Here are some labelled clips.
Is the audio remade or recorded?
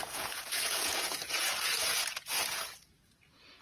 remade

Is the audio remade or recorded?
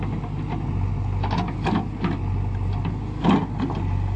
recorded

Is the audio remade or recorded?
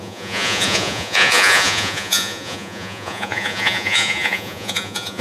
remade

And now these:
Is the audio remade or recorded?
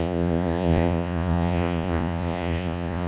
remade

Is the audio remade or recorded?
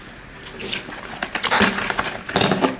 recorded